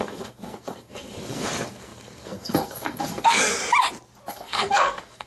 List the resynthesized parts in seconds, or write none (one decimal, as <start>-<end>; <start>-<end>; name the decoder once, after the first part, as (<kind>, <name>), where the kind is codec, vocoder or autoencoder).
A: 0.0-3.6 (codec, SNAC); 4.3-5.3